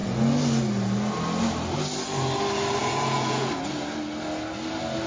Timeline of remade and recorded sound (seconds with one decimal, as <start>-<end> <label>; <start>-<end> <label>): 0.0-2.8 recorded; 2.8-3.5 remade; 3.5-5.1 recorded